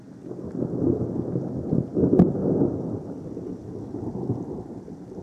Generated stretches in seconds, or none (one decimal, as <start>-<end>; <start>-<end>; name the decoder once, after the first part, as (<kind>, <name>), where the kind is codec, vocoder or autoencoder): 1.9-5.2 (vocoder, BigVGAN v2)